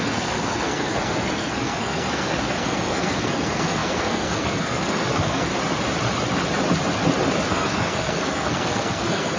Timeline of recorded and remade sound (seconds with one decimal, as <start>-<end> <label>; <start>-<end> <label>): 0.0-5.5 remade; 5.5-7.5 recorded; 7.5-9.4 remade